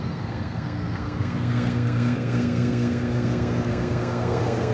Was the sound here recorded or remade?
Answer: remade